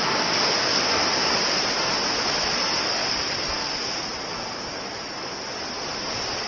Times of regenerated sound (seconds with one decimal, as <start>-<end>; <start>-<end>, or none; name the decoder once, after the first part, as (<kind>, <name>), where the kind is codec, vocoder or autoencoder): 3.0-4.2 (vocoder, BigVGAN v2)